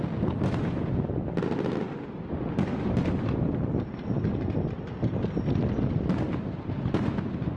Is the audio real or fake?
real